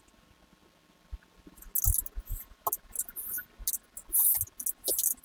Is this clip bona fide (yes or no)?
yes